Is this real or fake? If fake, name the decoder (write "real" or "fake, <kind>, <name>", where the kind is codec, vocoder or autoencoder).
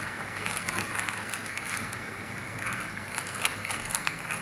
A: fake, codec, SNAC